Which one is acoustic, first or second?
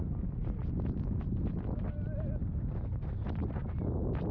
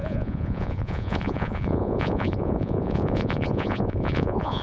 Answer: first